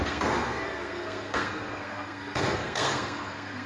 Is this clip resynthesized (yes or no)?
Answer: yes